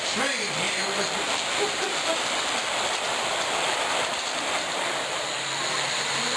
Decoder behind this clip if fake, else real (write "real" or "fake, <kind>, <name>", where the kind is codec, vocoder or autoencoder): fake, vocoder, BigVGAN v2